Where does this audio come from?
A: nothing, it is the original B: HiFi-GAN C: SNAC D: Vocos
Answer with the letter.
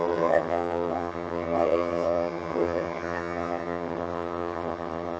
B